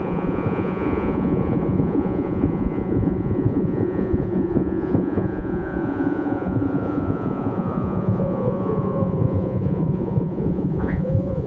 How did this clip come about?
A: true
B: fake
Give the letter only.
B